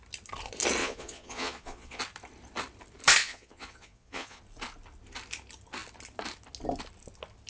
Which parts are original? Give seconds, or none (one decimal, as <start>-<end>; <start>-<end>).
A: 0.0-0.8; 2.0-3.2; 4.4-7.5